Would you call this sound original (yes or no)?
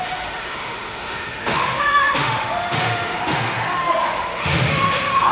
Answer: no